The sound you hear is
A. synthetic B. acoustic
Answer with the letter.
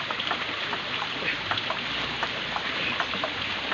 A